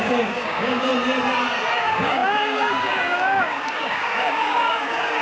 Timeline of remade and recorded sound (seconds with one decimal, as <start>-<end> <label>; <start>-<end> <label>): 0.0-0.9 remade; 0.9-1.7 recorded; 1.7-5.2 remade